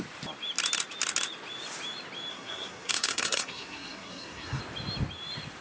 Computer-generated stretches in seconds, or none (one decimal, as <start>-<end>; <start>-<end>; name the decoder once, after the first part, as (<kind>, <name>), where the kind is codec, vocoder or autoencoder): 2.3-4.6 (codec, SNAC)